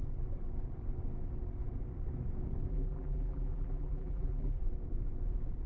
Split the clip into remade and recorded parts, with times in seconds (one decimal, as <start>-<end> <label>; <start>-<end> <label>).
0.0-2.7 recorded; 2.7-4.6 remade; 4.6-5.7 recorded